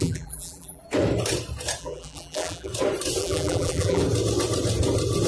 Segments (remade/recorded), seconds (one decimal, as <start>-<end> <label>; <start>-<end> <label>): 0.0-0.8 remade; 0.8-1.8 recorded; 1.8-2.7 remade; 2.7-3.2 recorded; 3.2-4.0 remade; 4.0-5.3 recorded